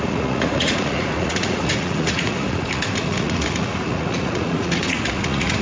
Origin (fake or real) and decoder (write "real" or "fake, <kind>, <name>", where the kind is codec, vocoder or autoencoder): fake, vocoder, Vocos